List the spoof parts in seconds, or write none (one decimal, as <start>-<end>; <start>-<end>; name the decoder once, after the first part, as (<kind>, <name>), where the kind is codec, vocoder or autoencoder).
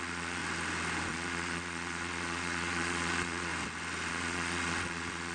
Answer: 0.0-0.4 (vocoder, Vocos); 1.1-3.5; 4.1-5.3